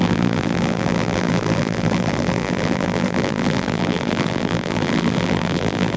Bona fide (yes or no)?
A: no